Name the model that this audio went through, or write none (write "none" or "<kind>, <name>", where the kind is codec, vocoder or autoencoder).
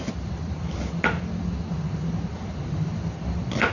none